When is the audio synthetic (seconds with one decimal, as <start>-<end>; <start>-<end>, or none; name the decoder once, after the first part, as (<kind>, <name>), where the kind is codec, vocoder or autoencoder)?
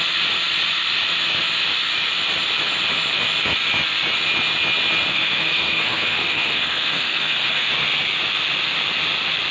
5.1-7.7 (codec, SNAC)